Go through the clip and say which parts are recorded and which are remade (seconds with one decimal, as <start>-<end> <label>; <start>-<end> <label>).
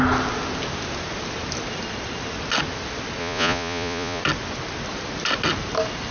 0.0-3.2 recorded; 3.2-4.2 remade; 4.2-6.1 recorded